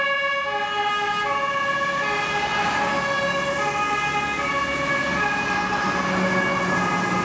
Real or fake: real